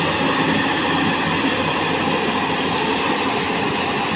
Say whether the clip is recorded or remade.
recorded